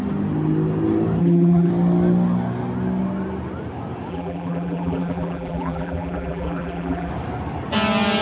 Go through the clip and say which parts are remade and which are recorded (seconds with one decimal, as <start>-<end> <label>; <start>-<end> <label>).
0.0-1.2 recorded; 1.2-1.7 remade; 1.7-4.1 recorded; 4.1-7.1 remade; 7.1-8.2 recorded